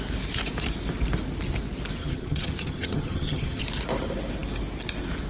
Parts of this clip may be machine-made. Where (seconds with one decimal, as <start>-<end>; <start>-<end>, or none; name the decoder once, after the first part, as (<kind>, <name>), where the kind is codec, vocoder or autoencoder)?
2.0-3.6 (vocoder, HiFi-GAN)